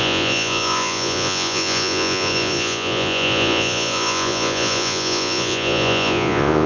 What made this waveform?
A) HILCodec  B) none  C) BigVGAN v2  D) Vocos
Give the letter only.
D